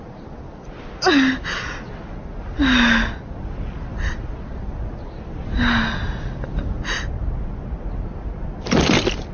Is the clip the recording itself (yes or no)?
yes